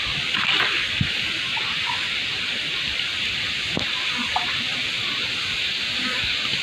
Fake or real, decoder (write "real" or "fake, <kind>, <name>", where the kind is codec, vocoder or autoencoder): real